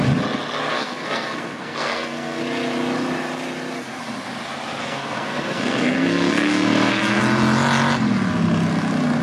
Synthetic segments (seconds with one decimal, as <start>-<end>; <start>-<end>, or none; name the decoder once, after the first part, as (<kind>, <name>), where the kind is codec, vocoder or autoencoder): 0.7-2.4 (codec, SNAC); 4.8-7.2